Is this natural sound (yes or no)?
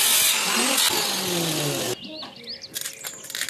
yes